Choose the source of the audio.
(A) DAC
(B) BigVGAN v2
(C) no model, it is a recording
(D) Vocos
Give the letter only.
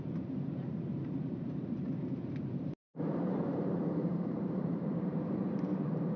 B